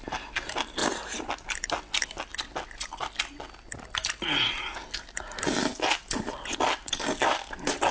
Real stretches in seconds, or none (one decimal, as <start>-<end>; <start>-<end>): 0.0-7.9